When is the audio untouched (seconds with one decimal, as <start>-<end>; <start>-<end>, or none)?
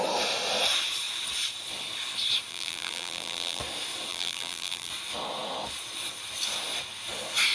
0.0-2.5; 3.6-4.1; 4.9-7.5